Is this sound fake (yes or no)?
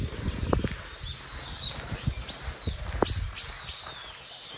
no